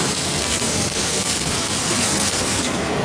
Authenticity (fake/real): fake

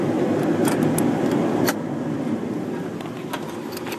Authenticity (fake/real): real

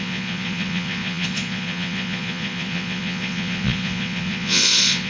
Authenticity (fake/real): fake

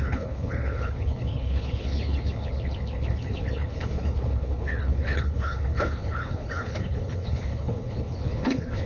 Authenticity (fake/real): fake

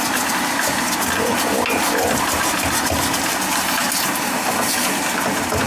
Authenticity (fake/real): real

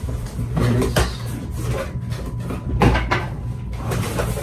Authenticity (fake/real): real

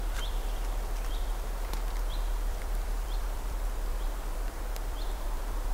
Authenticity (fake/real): fake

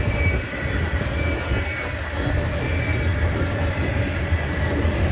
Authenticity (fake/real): real